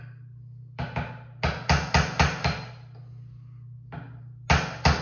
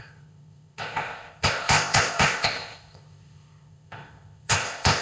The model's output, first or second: second